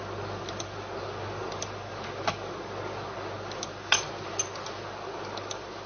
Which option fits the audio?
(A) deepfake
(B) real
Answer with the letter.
B